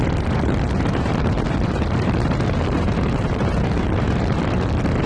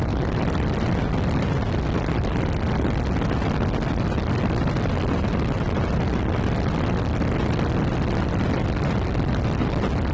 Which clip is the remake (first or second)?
first